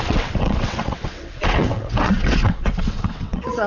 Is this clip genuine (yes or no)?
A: no